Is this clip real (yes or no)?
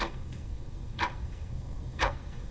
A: no